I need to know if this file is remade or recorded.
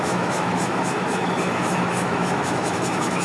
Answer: remade